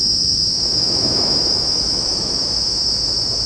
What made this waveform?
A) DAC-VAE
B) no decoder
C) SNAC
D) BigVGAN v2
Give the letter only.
A